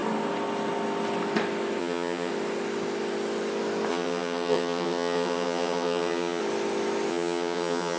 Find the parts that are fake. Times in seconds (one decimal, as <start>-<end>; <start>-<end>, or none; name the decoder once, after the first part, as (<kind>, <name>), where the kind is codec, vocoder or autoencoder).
1.8-2.3 (vocoder, HiFi-GAN); 3.9-6.4; 7.1-8.0